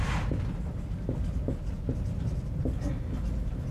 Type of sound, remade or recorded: recorded